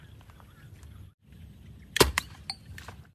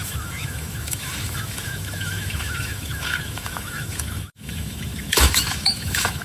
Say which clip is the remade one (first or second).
second